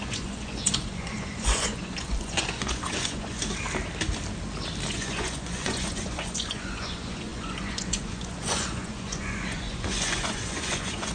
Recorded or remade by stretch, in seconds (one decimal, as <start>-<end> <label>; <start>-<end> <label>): 0.0-3.4 remade; 3.4-4.9 recorded; 4.9-11.1 remade